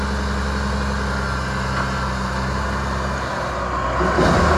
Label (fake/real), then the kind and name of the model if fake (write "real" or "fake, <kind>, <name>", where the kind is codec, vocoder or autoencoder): real